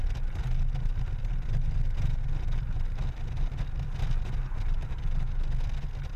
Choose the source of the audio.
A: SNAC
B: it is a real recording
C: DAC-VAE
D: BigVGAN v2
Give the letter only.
B